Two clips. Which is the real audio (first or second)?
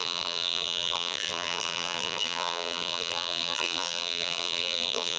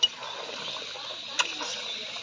second